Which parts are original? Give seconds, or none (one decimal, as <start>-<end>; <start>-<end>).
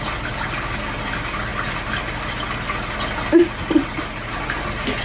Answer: 0.0-5.0